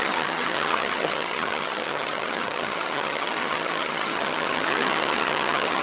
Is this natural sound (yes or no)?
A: no